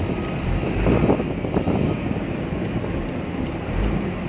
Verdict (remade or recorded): recorded